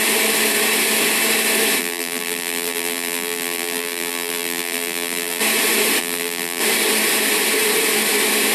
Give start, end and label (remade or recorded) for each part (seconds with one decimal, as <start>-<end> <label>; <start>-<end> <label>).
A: 0.0-1.8 recorded; 1.8-5.4 remade; 5.4-6.0 recorded; 6.0-6.6 remade; 6.6-8.5 recorded